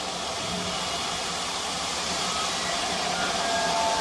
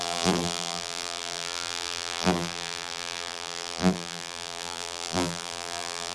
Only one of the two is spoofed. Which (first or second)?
second